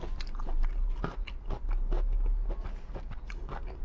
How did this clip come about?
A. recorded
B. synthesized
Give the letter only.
A